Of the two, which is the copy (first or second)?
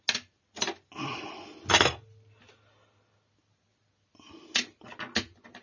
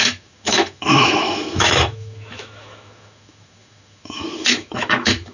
second